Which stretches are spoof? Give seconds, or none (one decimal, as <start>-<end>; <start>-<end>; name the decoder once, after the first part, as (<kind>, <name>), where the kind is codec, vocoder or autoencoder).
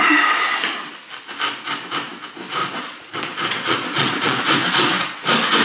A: 2.6-4.4 (vocoder, Vocos)